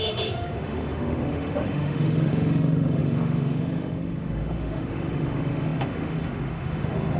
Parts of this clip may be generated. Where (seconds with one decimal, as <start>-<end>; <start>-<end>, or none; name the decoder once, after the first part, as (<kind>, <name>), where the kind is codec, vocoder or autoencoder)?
0.0-7.2 (autoencoder, DAC-VAE)